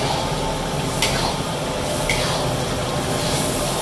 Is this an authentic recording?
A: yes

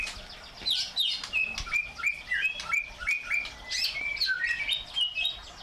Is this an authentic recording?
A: yes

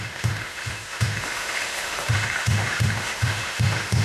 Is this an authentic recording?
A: no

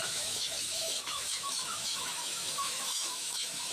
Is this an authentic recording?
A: no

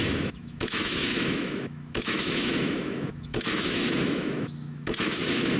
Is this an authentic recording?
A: no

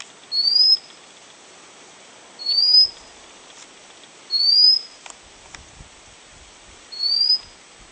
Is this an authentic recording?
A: yes